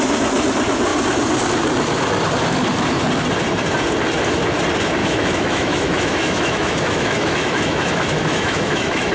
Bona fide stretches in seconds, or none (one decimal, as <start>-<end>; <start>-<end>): 0.0-5.0

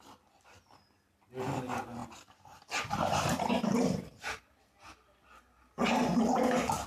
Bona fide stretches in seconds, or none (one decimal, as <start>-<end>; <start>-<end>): 0.0-2.0; 4.4-6.9

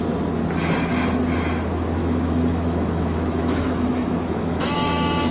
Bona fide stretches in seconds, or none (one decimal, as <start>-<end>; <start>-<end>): 0.0-2.0